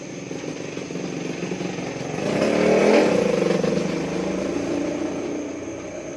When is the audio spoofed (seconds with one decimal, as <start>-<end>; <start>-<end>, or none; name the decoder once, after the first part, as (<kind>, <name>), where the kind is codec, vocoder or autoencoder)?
none